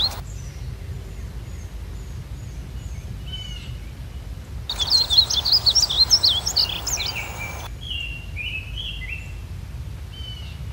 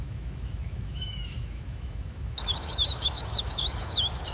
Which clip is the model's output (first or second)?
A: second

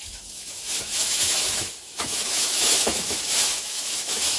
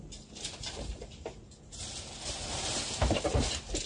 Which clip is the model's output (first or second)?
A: first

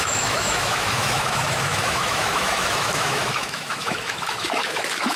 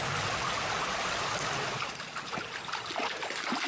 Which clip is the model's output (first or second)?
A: first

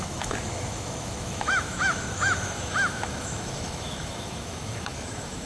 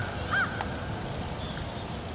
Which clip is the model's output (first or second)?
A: first